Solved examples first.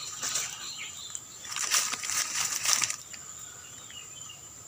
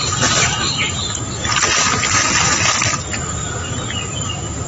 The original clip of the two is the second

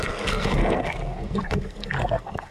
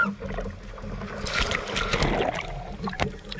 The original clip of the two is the second